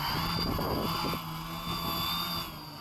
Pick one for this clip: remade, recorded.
recorded